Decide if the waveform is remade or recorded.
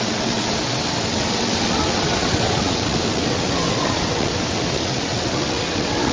remade